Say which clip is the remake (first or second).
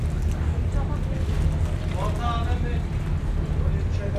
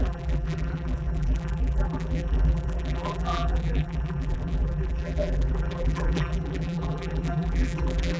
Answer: second